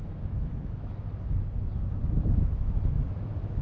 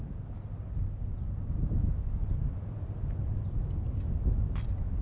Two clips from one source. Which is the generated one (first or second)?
first